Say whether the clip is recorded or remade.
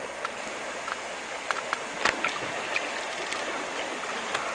recorded